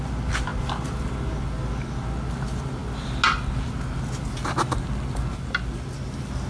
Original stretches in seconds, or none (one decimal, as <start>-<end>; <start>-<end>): 0.0-6.5